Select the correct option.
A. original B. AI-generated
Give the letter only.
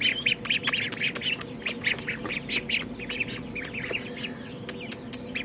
A